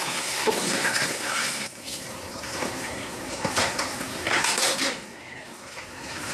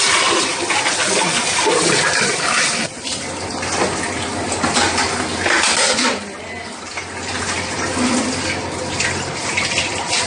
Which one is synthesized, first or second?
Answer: first